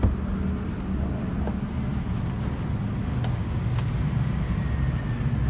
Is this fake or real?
real